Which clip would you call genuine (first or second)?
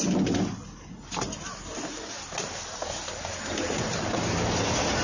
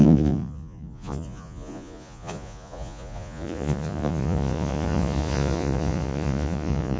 first